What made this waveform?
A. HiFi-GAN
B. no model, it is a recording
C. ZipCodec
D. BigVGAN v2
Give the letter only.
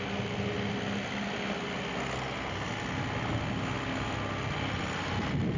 B